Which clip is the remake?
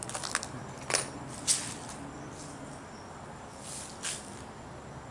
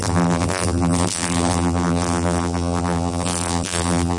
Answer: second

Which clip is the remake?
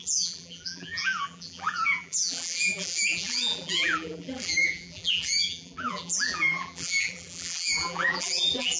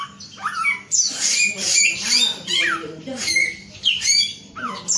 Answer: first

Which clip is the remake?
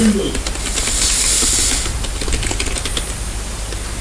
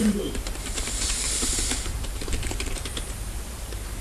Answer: second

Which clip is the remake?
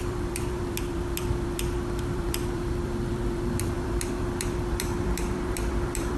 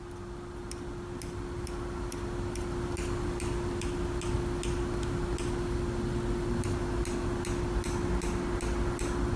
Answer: first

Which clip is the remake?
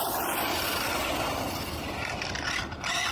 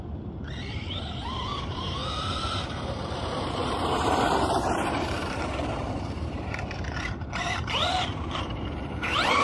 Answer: second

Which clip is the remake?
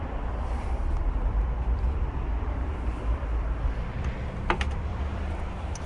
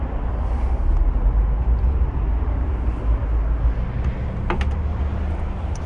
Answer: first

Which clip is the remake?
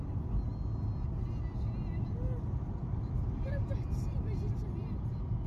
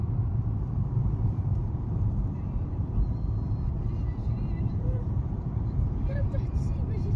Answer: second